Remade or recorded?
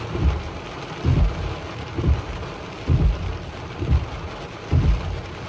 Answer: recorded